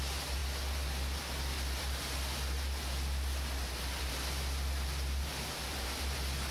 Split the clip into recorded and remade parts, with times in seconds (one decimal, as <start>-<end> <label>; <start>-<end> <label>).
0.0-6.5 recorded